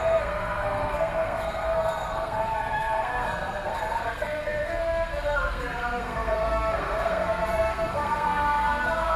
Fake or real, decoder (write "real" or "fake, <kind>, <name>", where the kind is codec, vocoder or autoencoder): fake, codec, SNAC